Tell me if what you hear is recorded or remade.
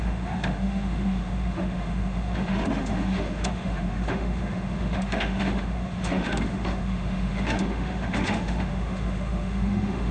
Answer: remade